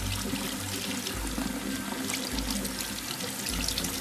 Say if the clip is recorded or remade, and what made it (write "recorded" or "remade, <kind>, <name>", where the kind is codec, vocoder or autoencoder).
recorded